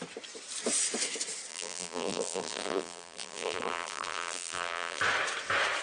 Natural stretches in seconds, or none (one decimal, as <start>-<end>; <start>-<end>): 0.0-1.5; 5.0-5.8